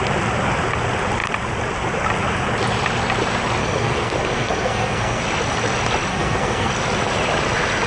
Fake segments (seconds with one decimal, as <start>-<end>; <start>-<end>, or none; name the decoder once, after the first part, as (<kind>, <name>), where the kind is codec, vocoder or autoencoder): 3.6-5.2 (codec, SNAC); 6.1-6.7